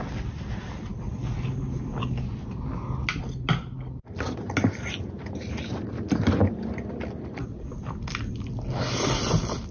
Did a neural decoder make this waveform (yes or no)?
no